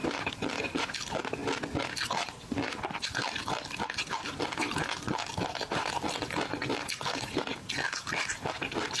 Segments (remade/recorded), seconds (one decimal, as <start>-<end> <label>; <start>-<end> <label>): 0.0-9.0 recorded